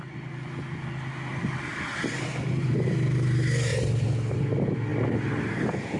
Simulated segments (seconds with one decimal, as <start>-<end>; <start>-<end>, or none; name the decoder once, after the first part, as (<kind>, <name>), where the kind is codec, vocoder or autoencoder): 1.3-2.5 (vocoder, BigVGAN v2); 3.7-4.4